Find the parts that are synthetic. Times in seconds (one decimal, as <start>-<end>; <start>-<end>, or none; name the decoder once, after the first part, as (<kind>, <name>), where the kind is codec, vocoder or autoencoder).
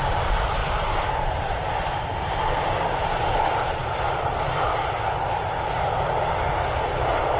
0.6-2.4 (vocoder, BigVGAN v2); 3.8-5.4